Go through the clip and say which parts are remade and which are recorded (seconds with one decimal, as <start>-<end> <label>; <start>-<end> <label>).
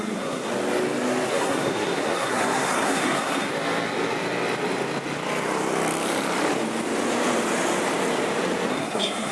0.0-0.5 remade; 0.5-1.3 recorded; 1.3-3.5 remade; 3.5-8.7 recorded; 8.7-9.3 remade